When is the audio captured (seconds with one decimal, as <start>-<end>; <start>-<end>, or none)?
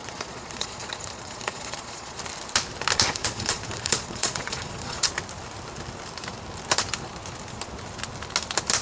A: 2.2-3.2; 5.1-8.8